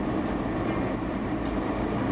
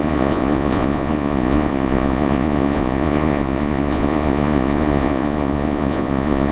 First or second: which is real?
first